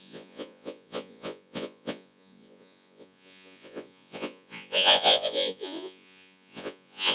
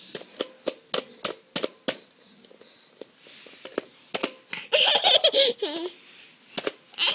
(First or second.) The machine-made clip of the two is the first